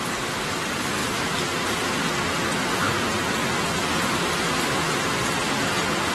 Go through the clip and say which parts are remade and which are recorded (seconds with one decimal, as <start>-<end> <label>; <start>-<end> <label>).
0.0-1.0 recorded; 1.0-1.9 remade; 1.9-4.0 recorded; 4.0-4.6 remade; 4.6-6.1 recorded